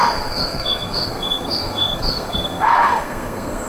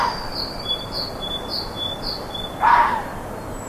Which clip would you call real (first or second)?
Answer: second